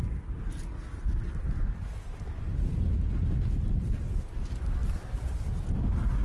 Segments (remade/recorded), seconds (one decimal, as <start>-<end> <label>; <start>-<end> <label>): 0.0-6.2 recorded